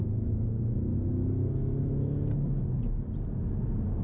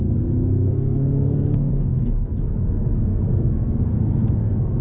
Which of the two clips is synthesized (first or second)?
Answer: second